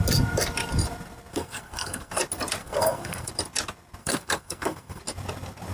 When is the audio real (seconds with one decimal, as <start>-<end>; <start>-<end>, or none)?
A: 0.0-1.3; 2.2-2.6; 3.3-4.0; 5.0-5.7